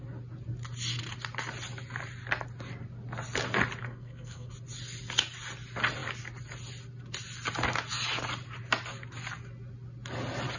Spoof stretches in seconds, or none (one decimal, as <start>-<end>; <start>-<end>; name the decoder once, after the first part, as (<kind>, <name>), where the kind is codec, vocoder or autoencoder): 3.8-4.5 (codec, SNAC)